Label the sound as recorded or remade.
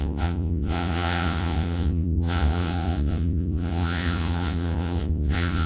remade